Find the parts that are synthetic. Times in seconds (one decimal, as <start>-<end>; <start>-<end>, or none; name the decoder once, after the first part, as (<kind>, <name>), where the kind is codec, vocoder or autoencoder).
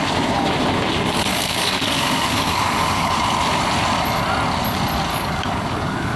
1.3-3.1 (codec, DAC); 5.1-6.2